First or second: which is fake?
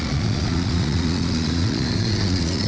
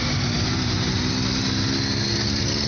first